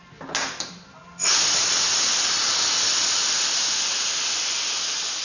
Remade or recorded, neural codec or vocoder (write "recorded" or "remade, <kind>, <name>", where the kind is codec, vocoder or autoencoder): recorded